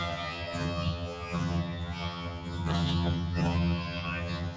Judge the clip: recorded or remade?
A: remade